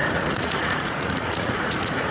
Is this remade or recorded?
remade